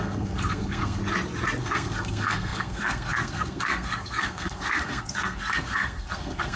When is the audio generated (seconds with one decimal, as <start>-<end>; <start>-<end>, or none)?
0.0-1.0; 1.6-6.6